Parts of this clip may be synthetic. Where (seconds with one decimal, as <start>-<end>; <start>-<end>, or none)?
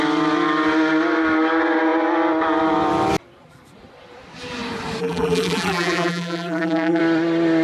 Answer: 5.0-7.0